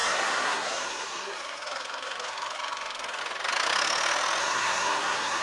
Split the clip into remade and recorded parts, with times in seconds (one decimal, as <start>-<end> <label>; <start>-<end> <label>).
0.0-3.2 remade; 3.2-4.4 recorded; 4.4-5.4 remade